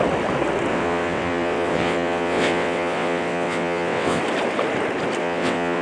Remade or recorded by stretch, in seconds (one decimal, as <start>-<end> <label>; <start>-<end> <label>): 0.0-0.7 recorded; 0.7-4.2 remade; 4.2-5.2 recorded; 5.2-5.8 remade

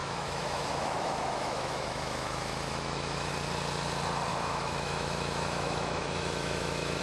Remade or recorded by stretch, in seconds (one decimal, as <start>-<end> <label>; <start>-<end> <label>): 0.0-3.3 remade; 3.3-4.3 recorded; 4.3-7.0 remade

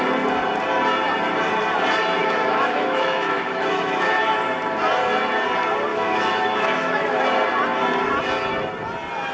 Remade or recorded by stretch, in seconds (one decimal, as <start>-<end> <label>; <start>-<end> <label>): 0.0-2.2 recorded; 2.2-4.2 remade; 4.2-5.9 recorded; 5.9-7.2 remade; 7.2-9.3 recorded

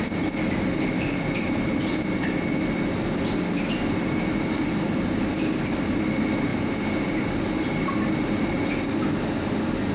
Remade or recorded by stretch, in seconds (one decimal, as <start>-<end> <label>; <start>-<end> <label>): 0.0-9.9 recorded